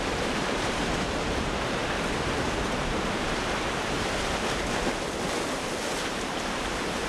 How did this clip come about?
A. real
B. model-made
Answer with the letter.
B